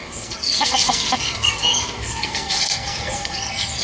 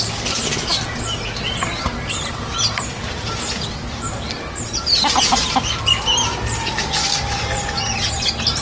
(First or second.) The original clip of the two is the second